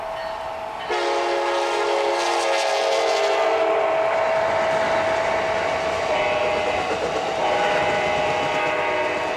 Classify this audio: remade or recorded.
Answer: recorded